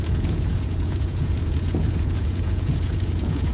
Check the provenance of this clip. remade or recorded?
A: remade